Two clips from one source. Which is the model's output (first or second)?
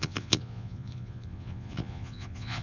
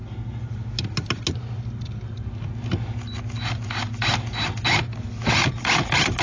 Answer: first